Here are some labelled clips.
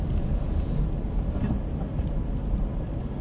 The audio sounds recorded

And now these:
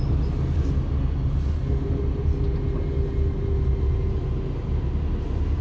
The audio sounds recorded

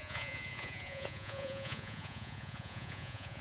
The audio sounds remade